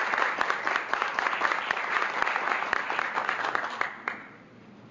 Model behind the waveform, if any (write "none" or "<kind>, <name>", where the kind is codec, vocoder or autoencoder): none